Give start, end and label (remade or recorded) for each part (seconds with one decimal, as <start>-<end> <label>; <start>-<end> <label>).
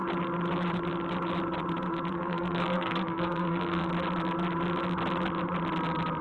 0.0-2.1 recorded; 2.1-3.9 remade; 3.9-6.2 recorded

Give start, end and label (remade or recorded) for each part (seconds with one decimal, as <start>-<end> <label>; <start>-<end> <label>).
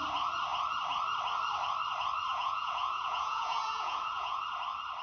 0.0-2.3 recorded; 2.3-4.4 remade; 4.4-5.0 recorded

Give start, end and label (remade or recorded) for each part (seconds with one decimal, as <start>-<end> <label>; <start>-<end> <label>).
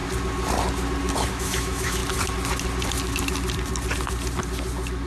0.0-1.3 recorded; 1.3-2.0 remade; 2.0-5.1 recorded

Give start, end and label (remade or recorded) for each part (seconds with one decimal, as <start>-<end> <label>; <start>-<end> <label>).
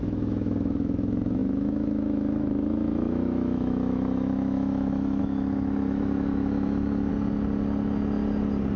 0.0-7.1 remade; 7.1-8.8 recorded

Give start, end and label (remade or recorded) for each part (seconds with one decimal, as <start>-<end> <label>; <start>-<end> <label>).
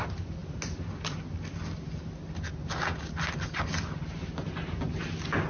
0.0-5.5 recorded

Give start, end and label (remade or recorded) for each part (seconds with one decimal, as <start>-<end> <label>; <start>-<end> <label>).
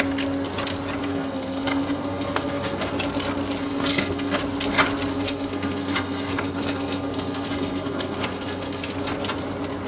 0.0-1.0 recorded; 1.0-2.9 remade; 2.9-3.6 recorded; 3.6-4.4 remade; 4.4-5.1 recorded; 5.1-8.9 remade; 8.9-9.9 recorded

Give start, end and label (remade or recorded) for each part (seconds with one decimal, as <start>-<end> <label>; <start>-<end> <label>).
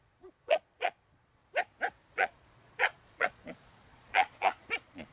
0.0-1.4 remade; 1.4-2.1 recorded; 2.1-5.1 remade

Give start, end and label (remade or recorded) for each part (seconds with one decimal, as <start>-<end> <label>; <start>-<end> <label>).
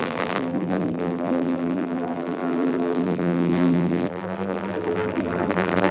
0.0-5.9 remade